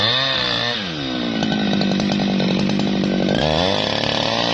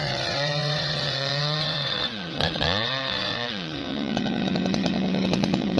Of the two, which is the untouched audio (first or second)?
first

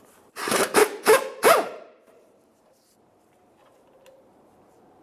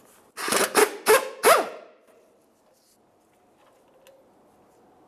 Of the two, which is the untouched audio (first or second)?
second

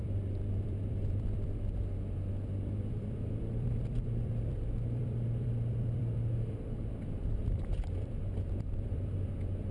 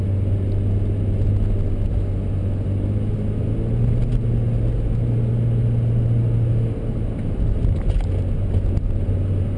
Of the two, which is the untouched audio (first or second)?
second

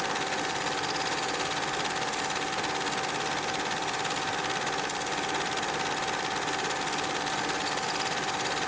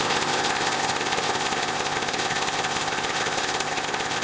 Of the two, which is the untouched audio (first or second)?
first